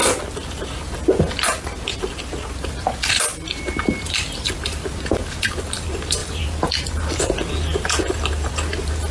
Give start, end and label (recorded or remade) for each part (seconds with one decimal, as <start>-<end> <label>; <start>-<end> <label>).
0.0-9.1 recorded